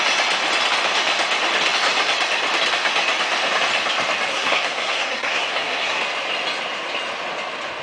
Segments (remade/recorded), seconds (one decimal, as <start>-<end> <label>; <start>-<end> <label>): 0.0-4.3 recorded; 4.3-6.0 remade; 6.0-7.8 recorded